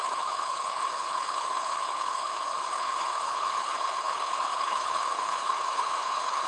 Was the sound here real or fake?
fake